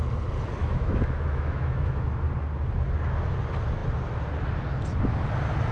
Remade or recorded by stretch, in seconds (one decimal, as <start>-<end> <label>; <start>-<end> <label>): 0.0-0.6 recorded; 0.6-2.1 remade; 2.1-5.7 recorded